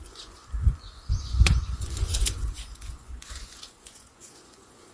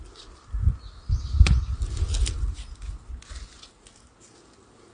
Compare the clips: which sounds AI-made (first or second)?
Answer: first